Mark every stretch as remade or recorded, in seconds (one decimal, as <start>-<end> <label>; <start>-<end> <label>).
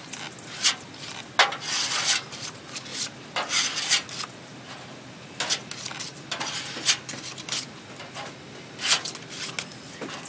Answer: 0.0-10.3 recorded